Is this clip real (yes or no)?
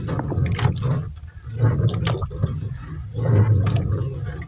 yes